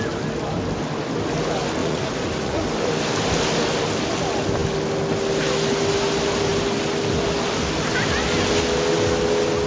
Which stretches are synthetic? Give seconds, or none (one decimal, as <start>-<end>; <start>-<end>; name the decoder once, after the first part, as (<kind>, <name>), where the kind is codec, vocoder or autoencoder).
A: 1.8-2.6 (vocoder, Vocos)